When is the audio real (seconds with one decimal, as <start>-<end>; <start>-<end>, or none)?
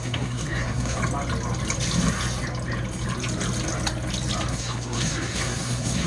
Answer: 1.0-4.5